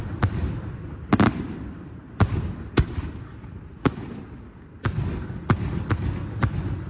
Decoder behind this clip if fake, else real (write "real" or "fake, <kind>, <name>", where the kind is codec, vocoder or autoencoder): real